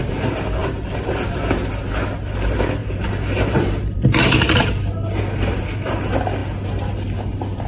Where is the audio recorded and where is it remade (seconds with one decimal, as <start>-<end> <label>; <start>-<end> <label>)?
0.0-0.6 recorded; 0.6-1.1 remade; 1.1-2.8 recorded; 2.8-4.6 remade; 4.6-7.7 recorded